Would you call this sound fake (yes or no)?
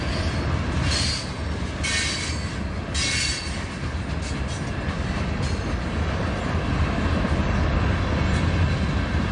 no